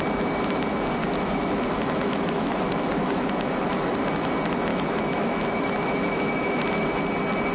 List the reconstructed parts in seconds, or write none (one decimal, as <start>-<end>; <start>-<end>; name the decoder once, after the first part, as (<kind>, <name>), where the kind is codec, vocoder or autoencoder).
1.0-4.3 (autoencoder, DAC-VAE); 4.7-6.7